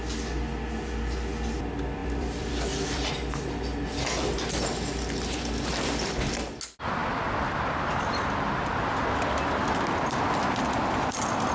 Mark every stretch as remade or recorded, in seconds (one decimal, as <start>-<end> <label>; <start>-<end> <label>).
0.0-2.0 recorded; 2.0-3.1 remade; 3.1-11.5 recorded